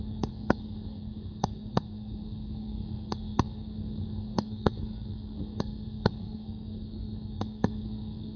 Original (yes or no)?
no